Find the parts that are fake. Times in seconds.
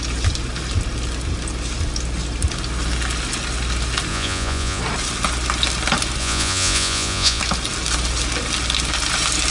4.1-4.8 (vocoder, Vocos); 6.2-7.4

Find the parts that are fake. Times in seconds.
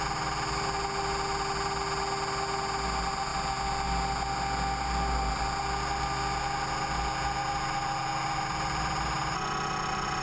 none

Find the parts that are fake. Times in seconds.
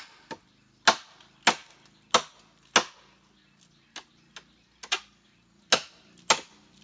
none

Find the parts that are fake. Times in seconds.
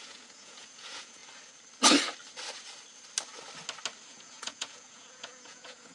0.0-1.2 (vocoder, Vocos); 4.1-5.9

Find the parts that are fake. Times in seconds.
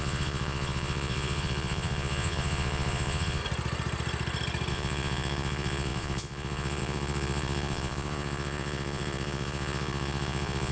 0.0-3.4 (vocoder, Vocos); 4.7-10.7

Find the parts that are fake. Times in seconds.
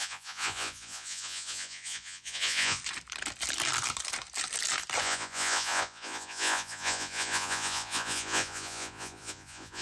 0.0-2.8 (vocoder, Vocos); 5.0-9.8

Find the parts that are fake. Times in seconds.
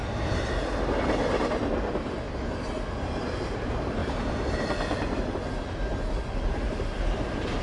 none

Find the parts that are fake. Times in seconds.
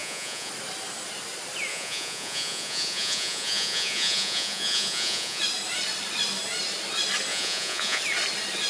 0.0-0.5 (vocoder, Vocos); 1.7-5.4; 7.3-8.0